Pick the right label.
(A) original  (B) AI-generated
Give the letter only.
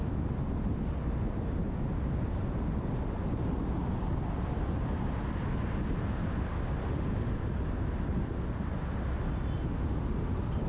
A